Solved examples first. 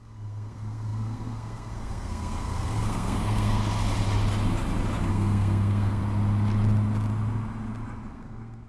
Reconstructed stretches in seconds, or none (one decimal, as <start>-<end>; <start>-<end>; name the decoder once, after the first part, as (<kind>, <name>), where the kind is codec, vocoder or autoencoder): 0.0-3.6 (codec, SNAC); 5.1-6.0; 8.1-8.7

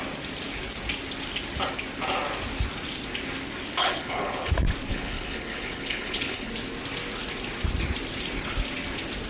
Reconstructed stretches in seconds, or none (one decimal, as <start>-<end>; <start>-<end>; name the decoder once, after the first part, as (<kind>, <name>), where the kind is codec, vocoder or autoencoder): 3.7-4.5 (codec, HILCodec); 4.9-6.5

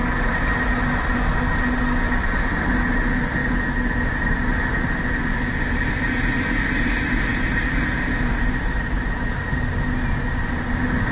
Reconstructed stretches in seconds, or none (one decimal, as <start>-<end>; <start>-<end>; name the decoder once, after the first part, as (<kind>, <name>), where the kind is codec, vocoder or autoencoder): none